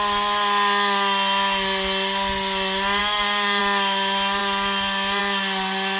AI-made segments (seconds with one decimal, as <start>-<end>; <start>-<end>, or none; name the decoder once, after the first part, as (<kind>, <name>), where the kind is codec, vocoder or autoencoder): 3.0-3.6 (codec, DAC)